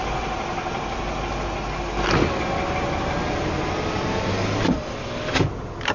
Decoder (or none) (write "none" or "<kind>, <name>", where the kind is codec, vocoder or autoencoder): none